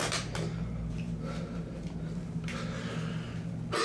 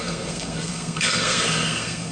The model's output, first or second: second